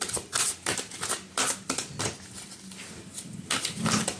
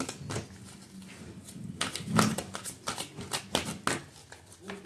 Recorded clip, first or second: second